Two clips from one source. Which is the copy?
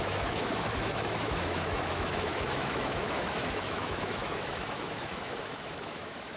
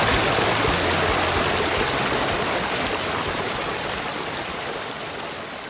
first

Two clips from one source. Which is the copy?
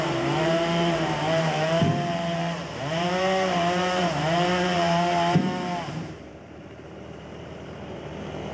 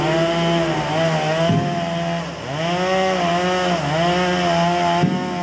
first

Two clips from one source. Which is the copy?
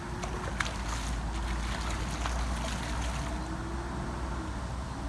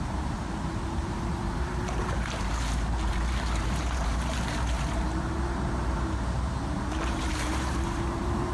second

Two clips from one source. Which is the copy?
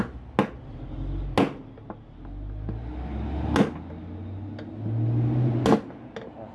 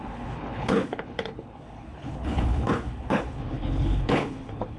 second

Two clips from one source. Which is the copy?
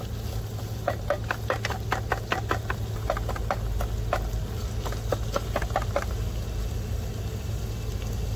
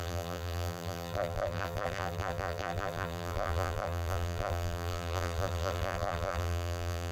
second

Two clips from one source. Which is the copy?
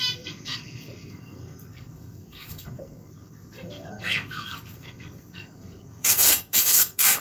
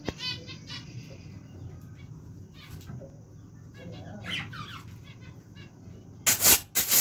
first